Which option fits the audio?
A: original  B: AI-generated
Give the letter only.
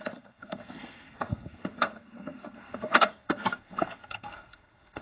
B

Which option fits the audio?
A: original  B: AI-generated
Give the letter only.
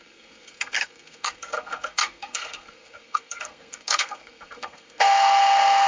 B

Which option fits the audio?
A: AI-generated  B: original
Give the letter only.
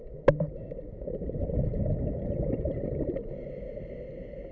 B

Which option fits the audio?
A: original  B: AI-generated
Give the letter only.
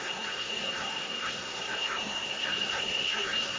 B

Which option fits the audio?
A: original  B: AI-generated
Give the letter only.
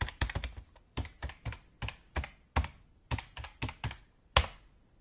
A